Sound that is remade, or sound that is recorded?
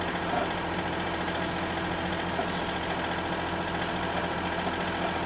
recorded